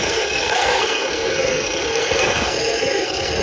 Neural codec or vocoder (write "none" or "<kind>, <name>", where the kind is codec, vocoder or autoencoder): codec, SNAC